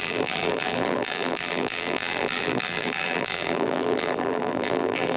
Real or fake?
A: fake